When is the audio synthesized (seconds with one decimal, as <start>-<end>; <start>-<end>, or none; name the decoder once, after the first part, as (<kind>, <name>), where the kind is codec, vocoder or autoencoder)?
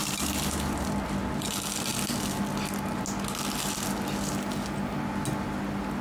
0.0-1.2 (vocoder, BigVGAN v2)